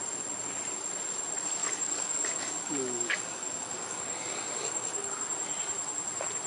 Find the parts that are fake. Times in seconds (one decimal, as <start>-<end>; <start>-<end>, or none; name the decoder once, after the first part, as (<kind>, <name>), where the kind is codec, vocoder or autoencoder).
1.6-5.1 (codec, DAC)